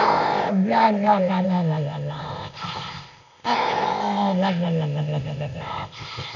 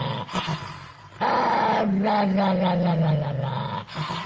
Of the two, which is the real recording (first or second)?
second